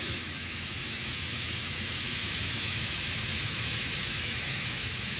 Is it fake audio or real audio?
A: fake